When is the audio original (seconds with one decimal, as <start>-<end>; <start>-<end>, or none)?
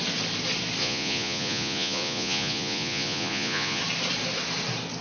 0.0-0.8; 3.8-5.0